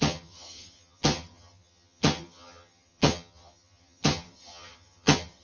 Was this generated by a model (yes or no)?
yes